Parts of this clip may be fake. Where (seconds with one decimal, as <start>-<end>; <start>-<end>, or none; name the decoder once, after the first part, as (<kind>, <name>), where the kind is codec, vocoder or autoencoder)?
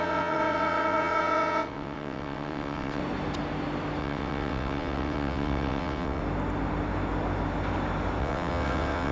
0.0-3.0 (vocoder, WaveNeXt); 4.0-6.2; 8.2-9.1